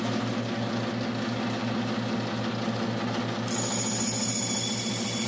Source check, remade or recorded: recorded